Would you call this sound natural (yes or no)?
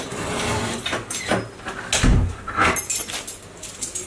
yes